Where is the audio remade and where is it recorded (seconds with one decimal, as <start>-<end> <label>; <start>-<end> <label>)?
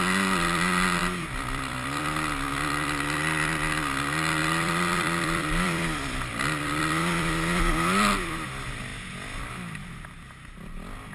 0.0-1.0 recorded; 1.0-2.0 remade; 2.0-4.4 recorded; 4.4-6.8 remade; 6.8-8.9 recorded; 8.9-9.5 remade; 9.5-11.1 recorded